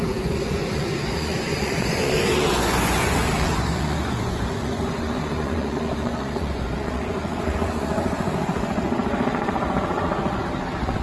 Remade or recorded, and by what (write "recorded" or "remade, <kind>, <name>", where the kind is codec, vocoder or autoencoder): remade, vocoder, Vocos